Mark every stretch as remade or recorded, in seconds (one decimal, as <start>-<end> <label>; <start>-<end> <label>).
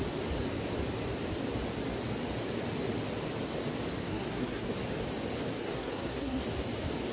0.0-4.0 recorded; 4.0-4.7 remade; 4.7-5.6 recorded; 5.6-6.4 remade; 6.4-7.1 recorded